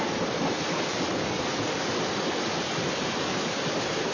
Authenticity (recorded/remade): remade